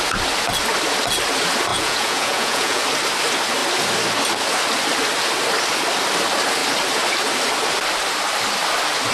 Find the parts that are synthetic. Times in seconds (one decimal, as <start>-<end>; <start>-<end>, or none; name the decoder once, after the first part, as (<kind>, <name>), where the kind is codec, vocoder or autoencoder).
1.7-2.8 (vocoder, Vocos)